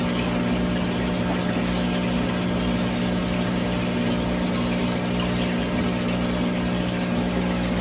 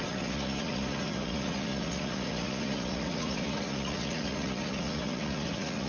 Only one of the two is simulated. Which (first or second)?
second